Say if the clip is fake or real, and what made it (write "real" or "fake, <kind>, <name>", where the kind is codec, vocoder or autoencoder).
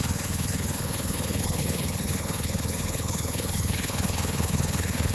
fake, codec, HILCodec